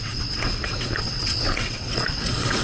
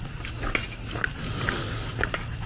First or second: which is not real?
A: first